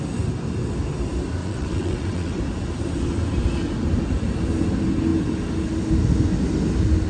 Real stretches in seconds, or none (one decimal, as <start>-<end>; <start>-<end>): 0.0-1.4; 2.4-7.1